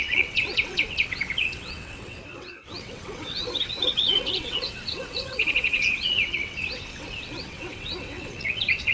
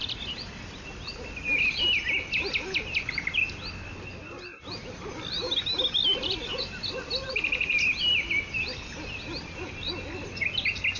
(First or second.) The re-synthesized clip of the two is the first